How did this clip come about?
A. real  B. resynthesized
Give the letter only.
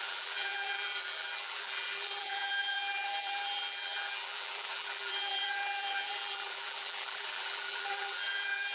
B